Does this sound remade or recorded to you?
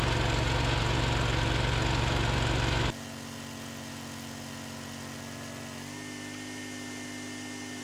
recorded